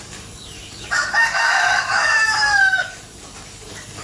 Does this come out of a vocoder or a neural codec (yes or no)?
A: yes